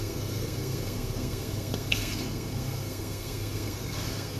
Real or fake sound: fake